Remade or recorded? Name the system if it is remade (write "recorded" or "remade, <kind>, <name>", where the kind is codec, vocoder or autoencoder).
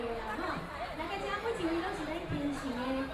recorded